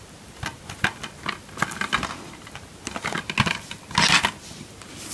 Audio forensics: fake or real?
real